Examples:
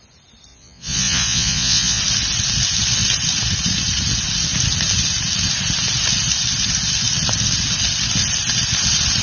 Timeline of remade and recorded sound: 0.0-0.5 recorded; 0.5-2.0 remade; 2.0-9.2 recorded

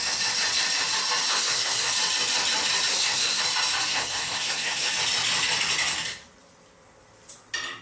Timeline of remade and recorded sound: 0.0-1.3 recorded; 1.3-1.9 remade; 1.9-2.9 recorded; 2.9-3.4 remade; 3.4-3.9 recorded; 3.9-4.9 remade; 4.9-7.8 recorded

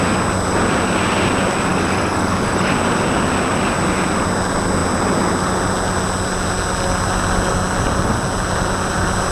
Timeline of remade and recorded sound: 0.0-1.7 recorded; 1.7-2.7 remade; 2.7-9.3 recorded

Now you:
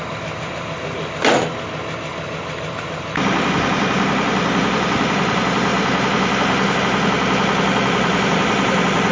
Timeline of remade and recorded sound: 0.0-9.1 recorded

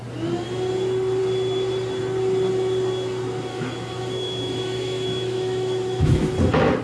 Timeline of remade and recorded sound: 0.0-3.5 recorded; 3.5-6.2 remade; 6.2-6.8 recorded

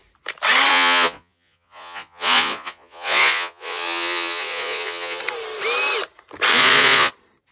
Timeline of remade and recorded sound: 0.0-0.7 recorded; 0.7-5.2 remade; 5.2-6.5 recorded; 6.5-7.1 remade; 7.1-7.5 recorded